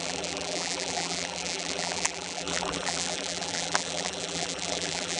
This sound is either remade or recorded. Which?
remade